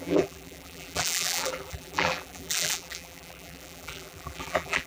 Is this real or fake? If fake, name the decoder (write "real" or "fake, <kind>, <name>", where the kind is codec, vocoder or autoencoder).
fake, vocoder, BigVGAN v2